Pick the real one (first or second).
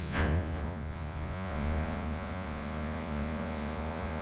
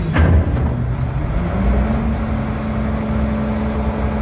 second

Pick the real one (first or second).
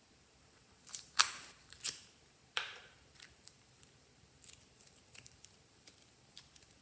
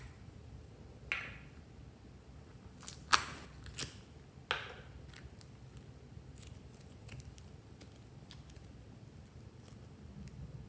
second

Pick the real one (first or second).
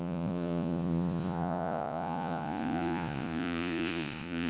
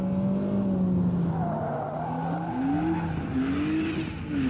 second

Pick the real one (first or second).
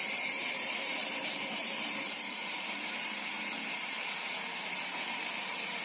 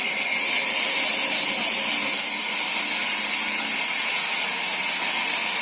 second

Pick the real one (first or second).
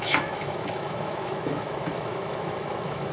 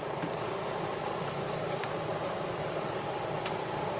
second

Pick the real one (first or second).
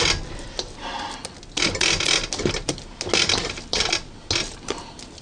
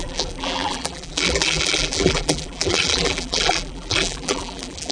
first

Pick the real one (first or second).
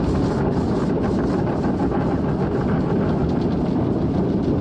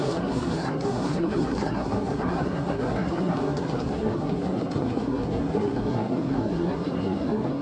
first